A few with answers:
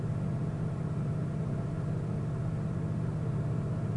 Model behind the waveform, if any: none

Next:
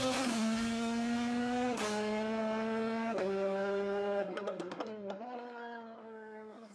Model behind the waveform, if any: codec, SNAC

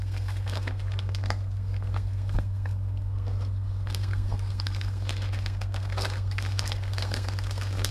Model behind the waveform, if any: codec, SNAC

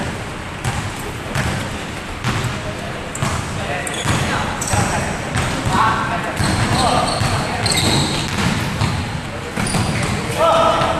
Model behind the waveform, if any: none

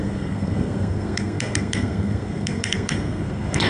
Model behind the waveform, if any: codec, SNAC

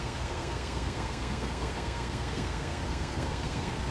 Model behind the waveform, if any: codec, SNAC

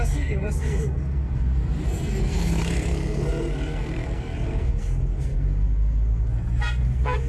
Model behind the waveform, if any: codec, SNAC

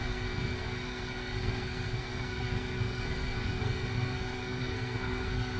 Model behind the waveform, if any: codec, SNAC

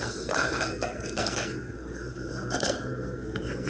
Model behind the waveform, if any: codec, SNAC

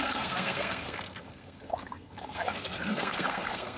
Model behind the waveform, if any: codec, SNAC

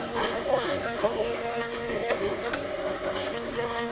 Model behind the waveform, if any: codec, SNAC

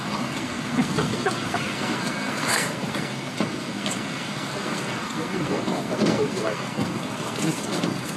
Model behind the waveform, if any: codec, SNAC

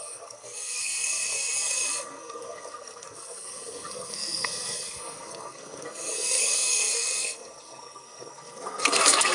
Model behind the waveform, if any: codec, SNAC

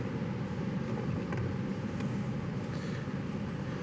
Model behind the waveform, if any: none